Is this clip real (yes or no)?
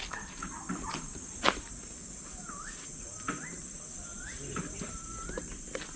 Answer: yes